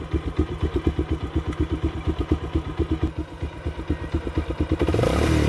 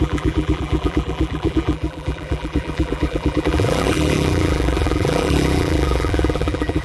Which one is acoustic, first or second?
first